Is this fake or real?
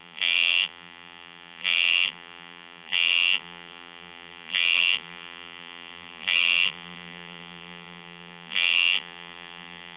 fake